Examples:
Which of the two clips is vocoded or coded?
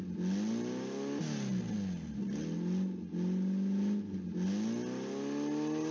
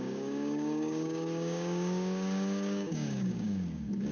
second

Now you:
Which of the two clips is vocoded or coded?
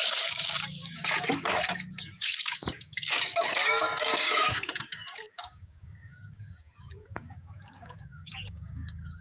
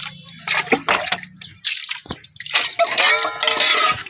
first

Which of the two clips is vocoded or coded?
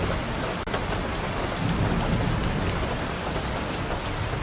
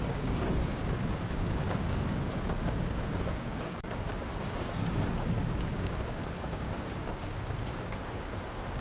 second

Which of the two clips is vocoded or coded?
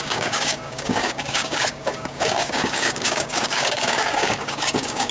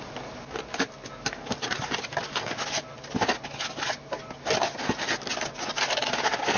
first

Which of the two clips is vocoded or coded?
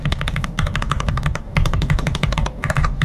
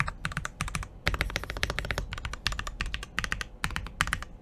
first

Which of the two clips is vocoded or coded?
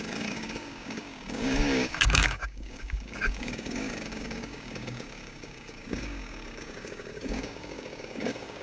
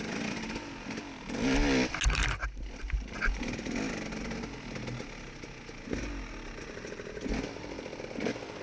first